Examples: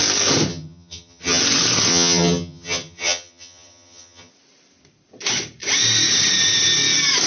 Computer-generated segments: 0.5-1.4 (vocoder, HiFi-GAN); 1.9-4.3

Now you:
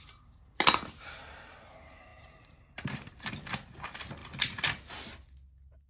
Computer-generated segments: 2.1-3.3 (vocoder, BigVGAN v2)

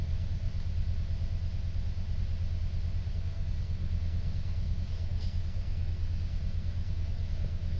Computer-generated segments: 0.0-0.5 (codec, SNAC); 3.1-7.8

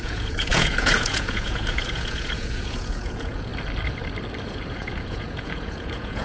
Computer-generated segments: 0.0-3.5 (vocoder, Vocos); 4.4-6.2

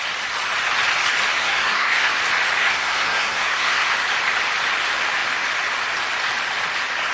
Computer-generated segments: 1.3-2.1 (codec, SNAC); 2.6-3.9

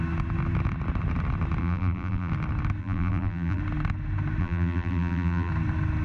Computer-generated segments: 1.6-2.3 (vocoder, BigVGAN v2); 2.8-3.6; 4.4-5.5